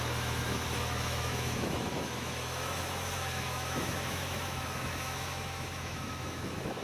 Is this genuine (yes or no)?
no